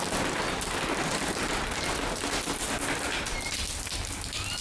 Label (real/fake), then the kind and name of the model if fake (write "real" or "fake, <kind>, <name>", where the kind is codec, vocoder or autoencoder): real